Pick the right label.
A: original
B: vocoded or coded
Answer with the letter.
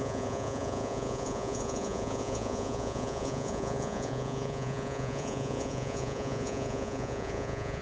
B